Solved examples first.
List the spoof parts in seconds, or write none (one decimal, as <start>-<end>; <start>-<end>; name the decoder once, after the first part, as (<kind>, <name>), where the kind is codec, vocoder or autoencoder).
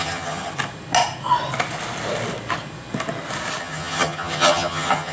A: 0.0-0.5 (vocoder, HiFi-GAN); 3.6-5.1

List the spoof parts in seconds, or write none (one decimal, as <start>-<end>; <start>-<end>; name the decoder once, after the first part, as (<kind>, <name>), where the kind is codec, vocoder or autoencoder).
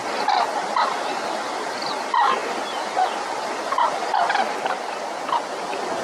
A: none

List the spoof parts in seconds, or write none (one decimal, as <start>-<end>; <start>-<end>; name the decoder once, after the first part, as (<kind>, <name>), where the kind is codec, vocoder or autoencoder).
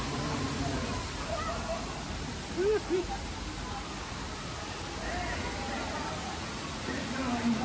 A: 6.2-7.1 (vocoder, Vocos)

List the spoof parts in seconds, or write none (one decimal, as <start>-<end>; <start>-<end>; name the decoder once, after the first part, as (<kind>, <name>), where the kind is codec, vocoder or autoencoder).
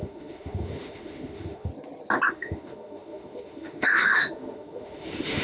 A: 0.0-1.7 (autoencoder, DAC-VAE); 2.3-5.4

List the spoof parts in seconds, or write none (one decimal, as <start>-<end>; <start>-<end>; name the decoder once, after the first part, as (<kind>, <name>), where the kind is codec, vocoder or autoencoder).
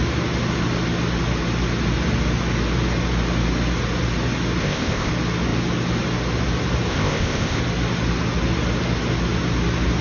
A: 4.6-5.1 (codec, ZipCodec); 6.9-7.6